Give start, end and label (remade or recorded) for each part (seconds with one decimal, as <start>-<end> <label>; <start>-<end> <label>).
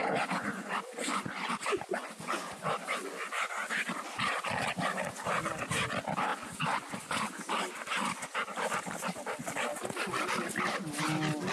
0.0-1.5 remade; 1.5-1.9 recorded; 1.9-4.0 remade; 4.0-6.3 recorded; 6.3-7.4 remade; 7.4-11.5 recorded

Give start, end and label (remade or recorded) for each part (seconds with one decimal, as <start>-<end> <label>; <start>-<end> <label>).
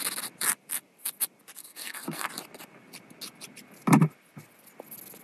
0.0-1.6 recorded; 1.6-2.3 remade; 2.3-5.2 recorded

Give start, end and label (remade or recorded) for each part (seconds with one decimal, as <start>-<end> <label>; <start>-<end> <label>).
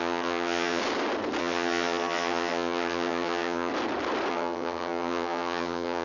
0.0-0.8 remade; 0.8-1.4 recorded; 1.4-3.7 remade; 3.7-4.3 recorded; 4.3-6.0 remade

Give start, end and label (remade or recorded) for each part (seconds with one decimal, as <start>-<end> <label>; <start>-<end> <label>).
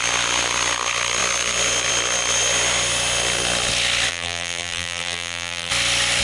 0.0-4.1 recorded; 4.1-5.7 remade; 5.7-6.2 recorded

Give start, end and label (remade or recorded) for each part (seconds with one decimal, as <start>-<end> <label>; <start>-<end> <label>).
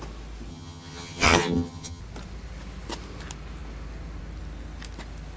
0.0-0.5 recorded; 0.5-2.0 remade; 2.0-5.4 recorded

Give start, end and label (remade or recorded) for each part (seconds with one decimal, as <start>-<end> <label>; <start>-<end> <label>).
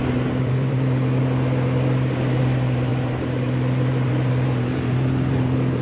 0.0-1.2 remade; 1.2-2.4 recorded; 2.4-5.8 remade